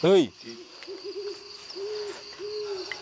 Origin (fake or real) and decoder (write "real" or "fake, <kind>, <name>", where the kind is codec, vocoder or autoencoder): real